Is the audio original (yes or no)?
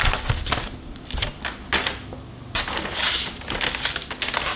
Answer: yes